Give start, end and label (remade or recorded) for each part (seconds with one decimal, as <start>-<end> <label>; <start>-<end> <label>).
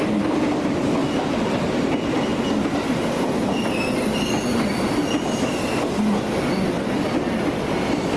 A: 0.0-1.0 recorded; 1.0-1.9 remade; 1.9-8.2 recorded